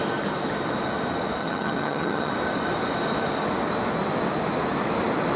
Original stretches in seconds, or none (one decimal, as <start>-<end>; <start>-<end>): 0.0-1.4; 2.3-5.4